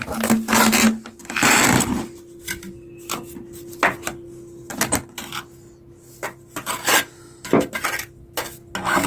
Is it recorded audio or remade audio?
recorded